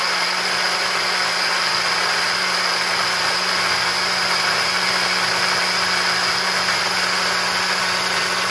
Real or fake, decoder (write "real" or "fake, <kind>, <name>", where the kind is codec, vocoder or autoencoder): real